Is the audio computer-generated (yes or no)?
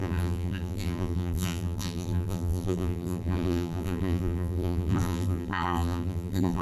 yes